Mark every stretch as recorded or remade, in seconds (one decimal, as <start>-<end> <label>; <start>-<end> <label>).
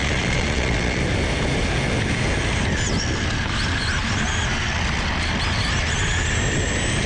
0.0-1.0 remade; 1.0-7.1 recorded